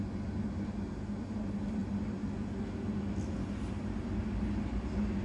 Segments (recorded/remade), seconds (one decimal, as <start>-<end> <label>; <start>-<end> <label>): 0.0-5.2 recorded